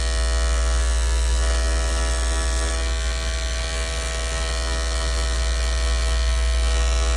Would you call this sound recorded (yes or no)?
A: yes